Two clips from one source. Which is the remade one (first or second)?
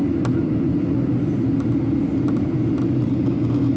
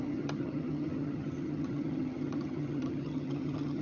second